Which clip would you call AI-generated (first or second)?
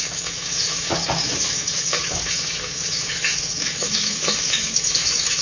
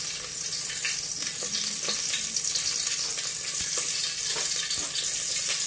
first